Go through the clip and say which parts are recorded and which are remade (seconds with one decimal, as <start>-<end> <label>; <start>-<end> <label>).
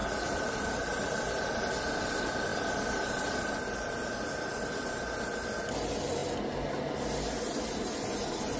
0.0-8.6 recorded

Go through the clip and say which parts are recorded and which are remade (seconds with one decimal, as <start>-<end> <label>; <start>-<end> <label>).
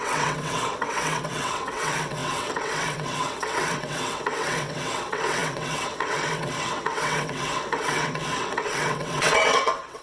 0.0-10.0 remade